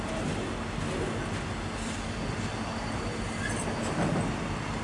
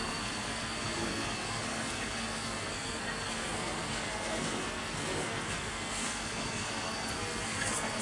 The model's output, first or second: second